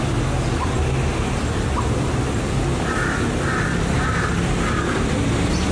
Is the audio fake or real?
real